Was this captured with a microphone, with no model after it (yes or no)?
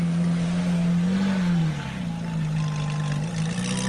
yes